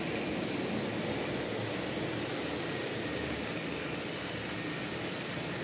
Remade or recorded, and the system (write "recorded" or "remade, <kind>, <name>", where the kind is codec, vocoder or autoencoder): recorded